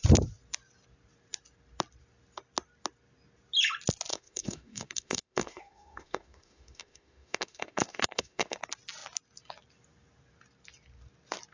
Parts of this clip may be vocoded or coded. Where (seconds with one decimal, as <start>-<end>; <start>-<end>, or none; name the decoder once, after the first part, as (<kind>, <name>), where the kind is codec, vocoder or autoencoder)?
4.1-8.6 (autoencoder, DAC-VAE)

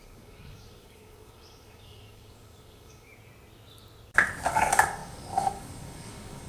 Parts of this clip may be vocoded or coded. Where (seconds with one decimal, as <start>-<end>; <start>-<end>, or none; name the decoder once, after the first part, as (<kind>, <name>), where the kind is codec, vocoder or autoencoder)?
0.0-3.1 (codec, DAC); 4.5-6.5

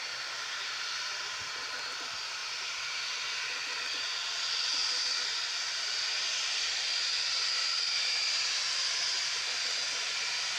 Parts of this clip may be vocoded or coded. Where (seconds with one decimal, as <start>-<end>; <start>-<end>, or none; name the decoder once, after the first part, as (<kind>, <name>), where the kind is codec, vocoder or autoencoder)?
2.4-3.0 (vocoder, BigVGAN v2)

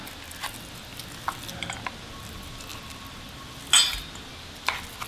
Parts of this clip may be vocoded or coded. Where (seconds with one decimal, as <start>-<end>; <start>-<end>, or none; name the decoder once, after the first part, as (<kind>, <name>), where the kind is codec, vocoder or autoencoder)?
none

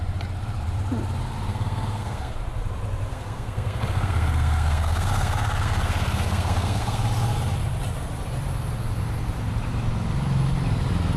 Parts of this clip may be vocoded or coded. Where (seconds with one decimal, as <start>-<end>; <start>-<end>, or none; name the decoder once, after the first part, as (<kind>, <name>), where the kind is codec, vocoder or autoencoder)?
1.5-2.3 (codec, SNAC); 3.1-7.0

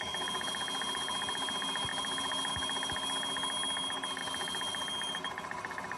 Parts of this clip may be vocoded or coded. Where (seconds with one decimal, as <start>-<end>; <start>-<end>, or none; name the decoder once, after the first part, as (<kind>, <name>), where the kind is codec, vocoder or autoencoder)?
none

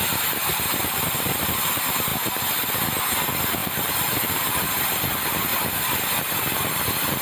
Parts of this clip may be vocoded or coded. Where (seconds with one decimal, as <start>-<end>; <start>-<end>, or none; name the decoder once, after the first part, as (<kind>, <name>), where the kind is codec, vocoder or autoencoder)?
0.5-1.4 (vocoder, BigVGAN v2); 3.6-4.8; 5.5-6.4

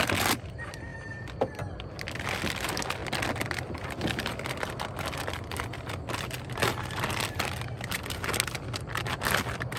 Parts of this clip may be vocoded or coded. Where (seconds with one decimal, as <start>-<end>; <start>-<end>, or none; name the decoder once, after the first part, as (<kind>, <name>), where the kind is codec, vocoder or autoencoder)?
none